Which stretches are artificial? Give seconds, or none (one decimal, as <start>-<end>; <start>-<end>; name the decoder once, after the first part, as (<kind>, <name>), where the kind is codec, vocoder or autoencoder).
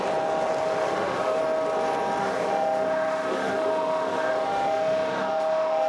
0.6-1.4 (autoencoder, DAC-VAE); 2.2-5.9